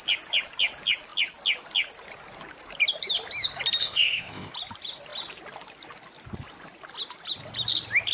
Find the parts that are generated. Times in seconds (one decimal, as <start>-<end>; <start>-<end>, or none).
3.8-4.5